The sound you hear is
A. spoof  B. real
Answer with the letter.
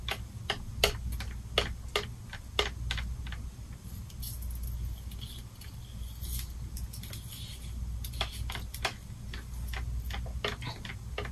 B